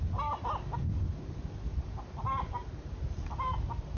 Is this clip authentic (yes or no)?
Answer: yes